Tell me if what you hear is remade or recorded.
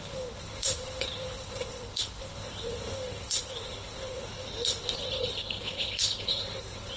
remade